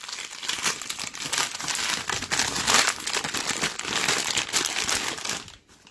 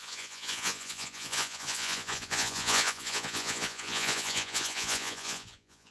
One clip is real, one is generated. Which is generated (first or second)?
second